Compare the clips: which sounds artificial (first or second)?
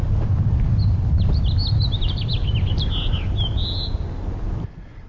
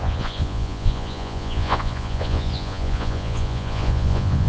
second